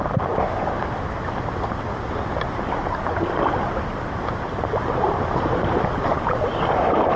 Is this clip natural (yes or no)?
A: yes